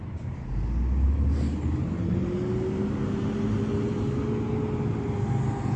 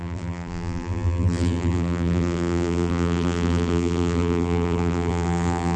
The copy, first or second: second